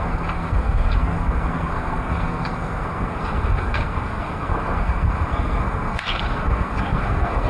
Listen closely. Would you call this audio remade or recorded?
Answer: remade